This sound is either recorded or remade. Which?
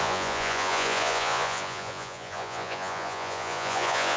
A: remade